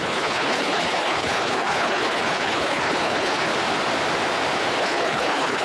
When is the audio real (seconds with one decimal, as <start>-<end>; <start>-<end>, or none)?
3.5-4.8